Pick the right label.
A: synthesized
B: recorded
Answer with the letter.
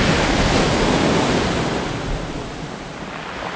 B